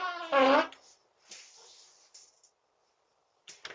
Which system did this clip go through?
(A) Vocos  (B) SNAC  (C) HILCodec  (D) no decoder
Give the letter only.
D